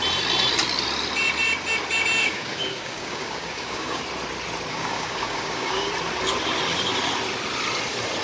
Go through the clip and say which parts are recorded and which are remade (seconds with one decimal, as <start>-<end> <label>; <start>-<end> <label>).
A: 0.0-2.2 recorded; 2.2-4.0 remade; 4.0-4.7 recorded; 4.7-5.9 remade; 5.9-8.2 recorded